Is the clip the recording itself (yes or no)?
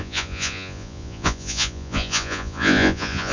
no